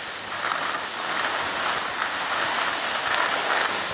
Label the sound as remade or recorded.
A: recorded